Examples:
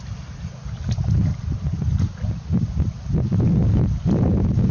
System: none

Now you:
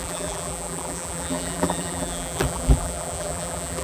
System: vocoder, BigVGAN v2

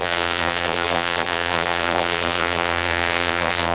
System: vocoder, BigVGAN v2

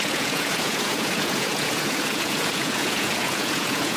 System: vocoder, Vocos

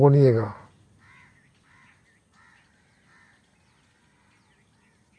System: none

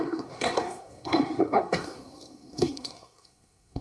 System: codec, SNAC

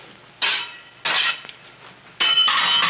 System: none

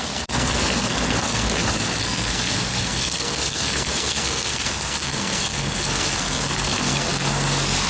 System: codec, SNAC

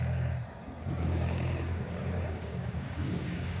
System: codec, DAC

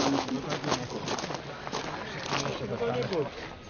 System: none